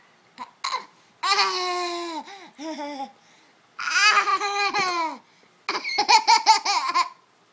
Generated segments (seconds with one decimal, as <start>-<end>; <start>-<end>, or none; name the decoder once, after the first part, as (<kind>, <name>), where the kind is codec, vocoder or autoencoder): 5.9-6.5 (vocoder, BigVGAN v2)